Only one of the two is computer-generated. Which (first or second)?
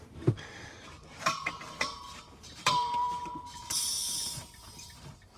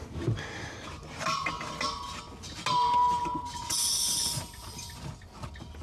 first